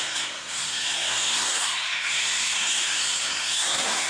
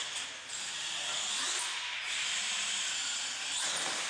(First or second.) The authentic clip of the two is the second